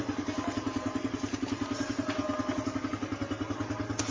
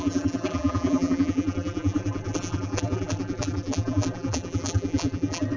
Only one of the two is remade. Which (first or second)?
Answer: second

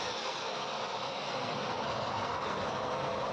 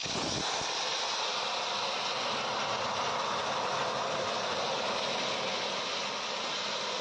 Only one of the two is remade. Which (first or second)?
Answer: first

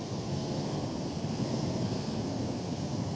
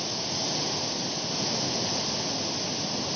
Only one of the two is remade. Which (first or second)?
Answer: first